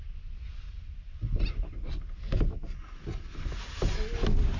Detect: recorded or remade recorded